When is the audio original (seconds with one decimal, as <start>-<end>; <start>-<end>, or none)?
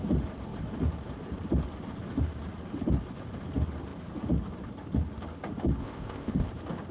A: 0.0-5.8; 6.5-6.9